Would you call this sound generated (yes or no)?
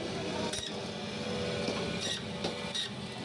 no